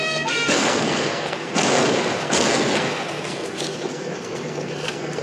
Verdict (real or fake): fake